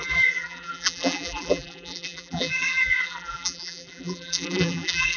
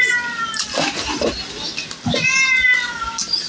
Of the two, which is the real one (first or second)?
second